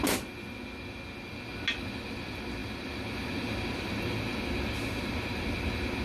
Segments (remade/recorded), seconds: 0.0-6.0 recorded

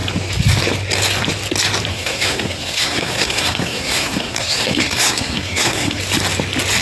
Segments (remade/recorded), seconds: 0.0-1.9 recorded; 1.9-6.0 remade; 6.0-6.8 recorded

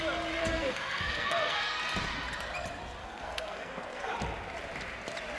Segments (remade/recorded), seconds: 0.0-0.4 recorded; 0.4-1.8 remade; 1.8-3.0 recorded; 3.0-4.1 remade; 4.1-5.4 recorded